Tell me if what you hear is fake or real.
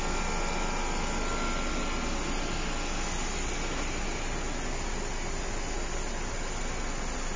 real